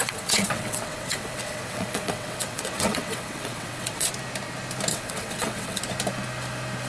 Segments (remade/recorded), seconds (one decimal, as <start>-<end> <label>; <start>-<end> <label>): 0.0-4.1 remade; 4.1-4.9 recorded; 4.9-5.8 remade; 5.8-6.9 recorded